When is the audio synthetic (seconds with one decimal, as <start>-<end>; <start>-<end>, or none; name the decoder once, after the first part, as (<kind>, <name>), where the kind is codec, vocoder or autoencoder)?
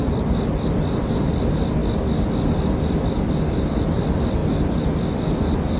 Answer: none